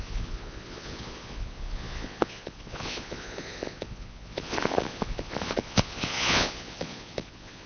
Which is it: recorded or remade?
remade